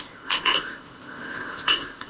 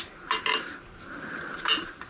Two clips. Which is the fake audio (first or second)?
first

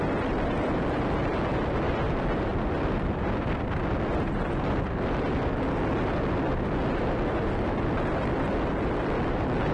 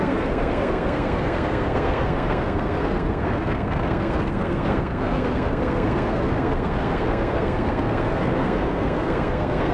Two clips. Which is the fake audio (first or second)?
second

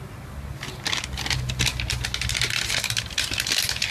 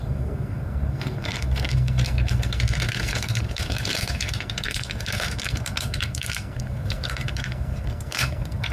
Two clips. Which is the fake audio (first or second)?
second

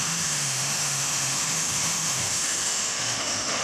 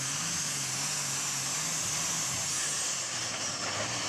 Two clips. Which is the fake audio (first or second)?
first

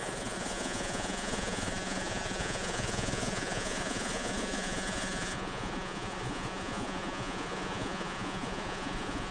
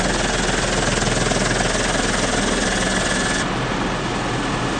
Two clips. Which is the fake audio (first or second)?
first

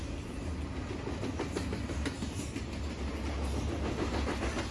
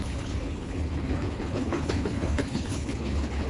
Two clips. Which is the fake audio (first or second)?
second